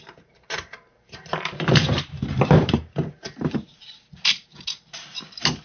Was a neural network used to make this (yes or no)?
yes